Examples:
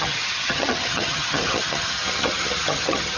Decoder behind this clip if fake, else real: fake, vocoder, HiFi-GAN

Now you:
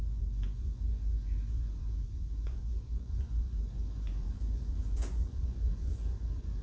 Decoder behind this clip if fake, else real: fake, vocoder, Vocos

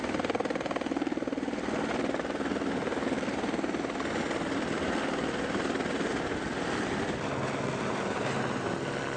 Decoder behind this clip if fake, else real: real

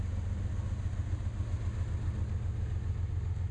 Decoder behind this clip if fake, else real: real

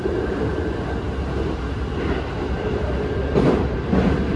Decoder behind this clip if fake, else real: real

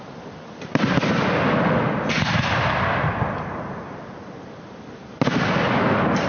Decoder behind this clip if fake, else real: real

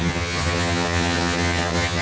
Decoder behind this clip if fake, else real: fake, vocoder, HiFi-GAN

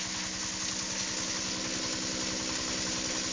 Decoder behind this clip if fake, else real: real